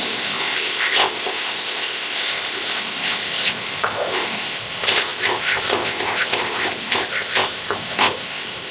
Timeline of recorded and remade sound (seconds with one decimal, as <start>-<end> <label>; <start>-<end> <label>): 0.0-8.7 remade